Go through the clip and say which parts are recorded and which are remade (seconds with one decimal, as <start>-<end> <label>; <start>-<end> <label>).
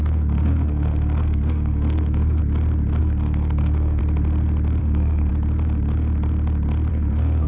0.0-2.4 remade; 2.4-3.0 recorded; 3.0-4.0 remade; 4.0-4.8 recorded; 4.8-5.3 remade; 5.3-6.9 recorded; 6.9-7.5 remade